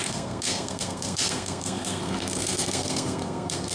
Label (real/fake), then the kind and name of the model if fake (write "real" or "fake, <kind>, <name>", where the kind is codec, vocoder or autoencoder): fake, codec, SNAC